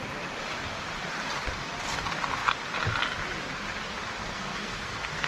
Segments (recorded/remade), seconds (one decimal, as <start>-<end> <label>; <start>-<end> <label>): 0.0-4.2 recorded; 4.2-5.3 remade